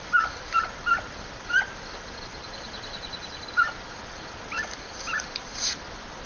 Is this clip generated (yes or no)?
yes